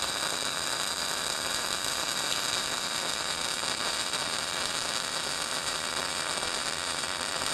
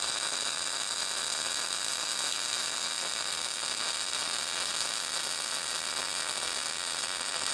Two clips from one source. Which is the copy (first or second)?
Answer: first